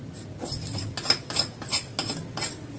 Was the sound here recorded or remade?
recorded